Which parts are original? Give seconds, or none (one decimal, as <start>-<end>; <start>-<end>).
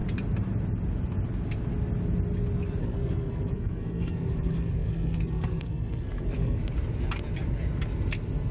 0.0-2.8; 6.6-8.5